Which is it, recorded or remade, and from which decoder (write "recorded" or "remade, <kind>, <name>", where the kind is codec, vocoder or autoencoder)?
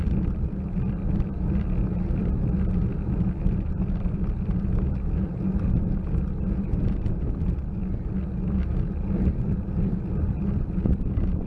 recorded